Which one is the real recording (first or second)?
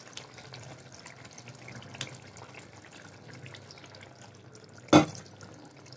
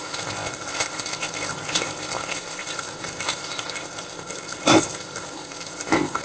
first